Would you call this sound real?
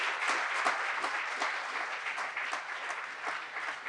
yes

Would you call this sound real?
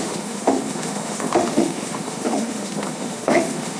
no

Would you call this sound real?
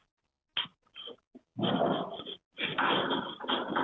yes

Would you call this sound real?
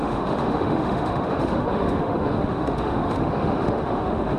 no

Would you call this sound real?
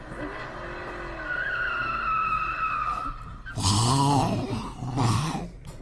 yes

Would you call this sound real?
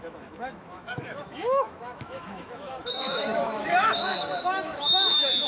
no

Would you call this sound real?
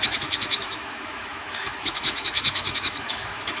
no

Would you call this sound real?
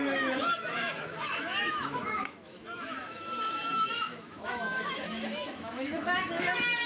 no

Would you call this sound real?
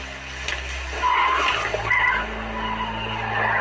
yes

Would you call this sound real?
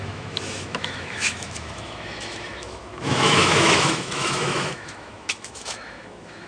no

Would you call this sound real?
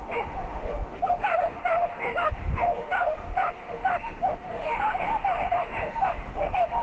no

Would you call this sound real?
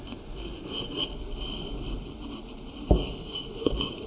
yes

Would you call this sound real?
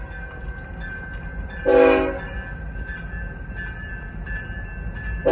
yes